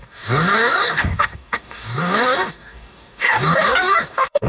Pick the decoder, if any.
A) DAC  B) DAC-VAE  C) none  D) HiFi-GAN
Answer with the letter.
A